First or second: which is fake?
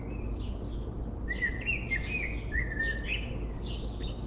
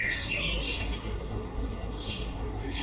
second